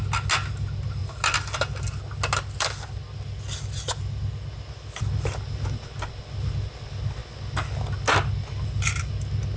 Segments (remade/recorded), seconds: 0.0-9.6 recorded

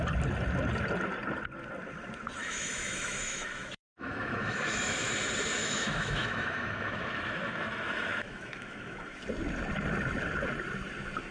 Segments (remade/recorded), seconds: 0.0-2.4 recorded; 2.4-5.1 remade; 5.1-5.6 recorded; 5.6-9.2 remade; 9.2-11.3 recorded

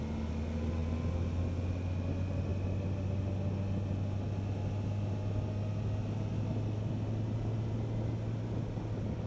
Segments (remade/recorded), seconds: 0.0-9.3 recorded

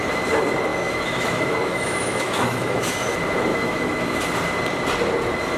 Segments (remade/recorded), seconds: 0.0-0.7 recorded; 0.7-2.9 remade; 2.9-3.5 recorded; 3.5-4.2 remade; 4.2-5.6 recorded

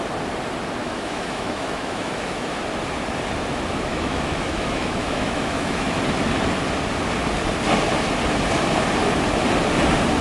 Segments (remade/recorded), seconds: 0.0-0.8 recorded; 0.8-2.6 remade; 2.6-3.9 recorded; 3.9-6.0 remade; 6.0-10.2 recorded